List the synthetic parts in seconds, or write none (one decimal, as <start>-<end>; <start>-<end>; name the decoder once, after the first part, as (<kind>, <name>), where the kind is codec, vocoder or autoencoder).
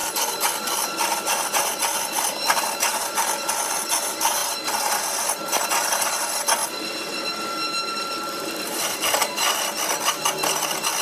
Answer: 0.0-3.5 (vocoder, BigVGAN v2); 6.6-9.6